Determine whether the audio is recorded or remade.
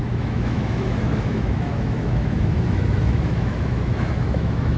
remade